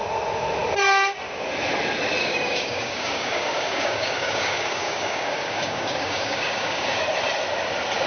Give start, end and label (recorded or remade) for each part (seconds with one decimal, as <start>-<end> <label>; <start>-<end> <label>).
0.0-2.2 recorded; 2.2-7.0 remade; 7.0-8.1 recorded